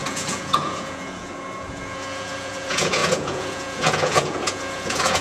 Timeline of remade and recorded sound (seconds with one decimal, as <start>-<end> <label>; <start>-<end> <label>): 0.0-5.2 remade